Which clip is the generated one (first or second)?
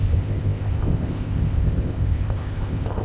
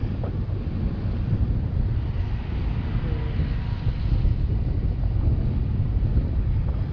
first